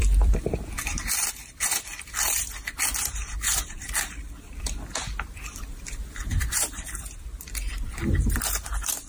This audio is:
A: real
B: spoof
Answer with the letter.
B